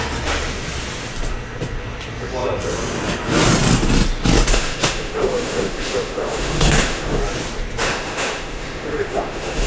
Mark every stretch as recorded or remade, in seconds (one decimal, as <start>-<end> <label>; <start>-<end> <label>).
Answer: 0.0-4.5 recorded; 4.5-7.2 remade; 7.2-7.8 recorded; 7.8-9.7 remade